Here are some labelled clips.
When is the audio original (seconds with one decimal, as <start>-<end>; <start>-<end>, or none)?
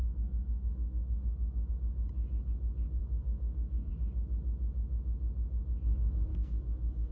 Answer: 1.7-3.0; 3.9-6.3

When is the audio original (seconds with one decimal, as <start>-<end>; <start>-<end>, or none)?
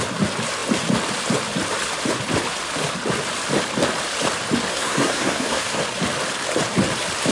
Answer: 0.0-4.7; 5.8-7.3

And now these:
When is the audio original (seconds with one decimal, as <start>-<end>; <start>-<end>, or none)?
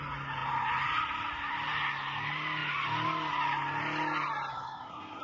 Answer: 0.0-4.5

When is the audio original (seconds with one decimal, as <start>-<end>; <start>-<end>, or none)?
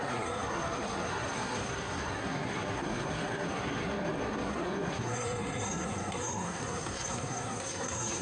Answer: none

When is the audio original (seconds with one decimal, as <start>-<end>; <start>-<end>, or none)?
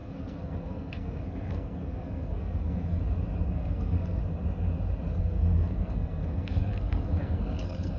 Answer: 3.0-3.5; 4.2-5.2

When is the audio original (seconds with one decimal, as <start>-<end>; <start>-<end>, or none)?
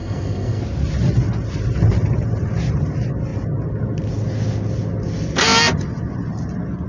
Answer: 0.6-6.9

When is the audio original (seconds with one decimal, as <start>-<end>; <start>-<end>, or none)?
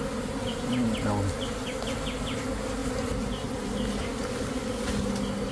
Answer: 0.0-5.5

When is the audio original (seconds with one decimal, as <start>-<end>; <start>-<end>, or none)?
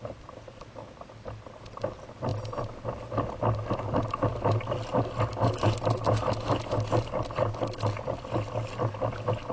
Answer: 0.0-9.5